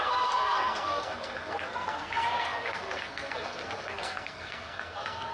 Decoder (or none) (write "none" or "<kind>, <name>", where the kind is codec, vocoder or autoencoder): codec, SNAC